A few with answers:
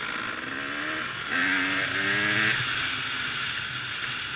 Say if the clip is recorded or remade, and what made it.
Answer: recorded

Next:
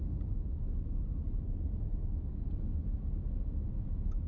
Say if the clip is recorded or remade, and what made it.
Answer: recorded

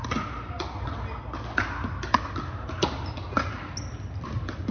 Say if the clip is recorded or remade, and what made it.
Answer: recorded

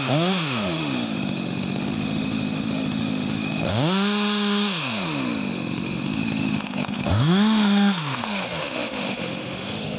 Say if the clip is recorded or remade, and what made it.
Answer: remade, autoencoder, DAC-VAE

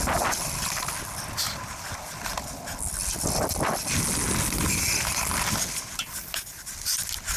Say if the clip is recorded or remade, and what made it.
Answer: recorded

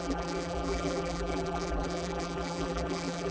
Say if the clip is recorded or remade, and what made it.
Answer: remade, vocoder, BigVGAN v2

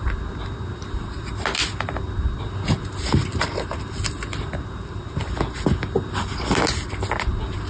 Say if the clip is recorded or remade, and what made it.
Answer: recorded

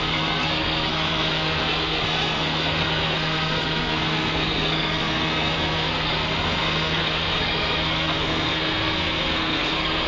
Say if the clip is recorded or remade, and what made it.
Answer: remade, codec, SNAC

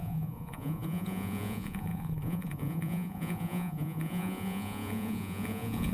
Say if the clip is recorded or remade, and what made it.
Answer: remade, vocoder, Vocos